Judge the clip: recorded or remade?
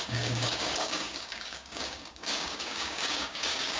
remade